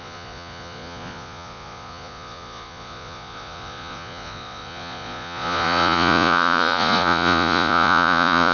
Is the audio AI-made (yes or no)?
yes